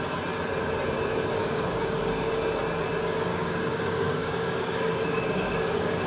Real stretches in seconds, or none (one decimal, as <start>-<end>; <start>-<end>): 0.0-1.4; 2.3-3.3